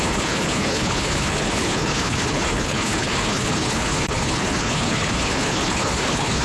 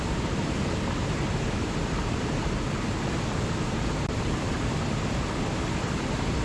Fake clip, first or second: first